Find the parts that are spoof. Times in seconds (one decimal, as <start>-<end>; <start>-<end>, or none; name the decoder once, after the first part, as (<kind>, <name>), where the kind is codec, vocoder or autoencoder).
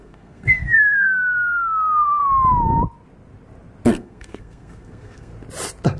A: 0.0-2.2 (codec, SNAC); 3.9-5.3